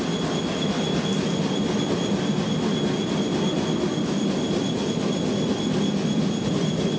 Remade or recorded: recorded